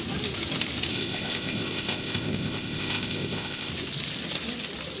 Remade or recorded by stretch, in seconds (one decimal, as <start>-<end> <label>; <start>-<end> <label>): 0.0-0.9 recorded; 0.9-3.7 remade; 3.7-5.0 recorded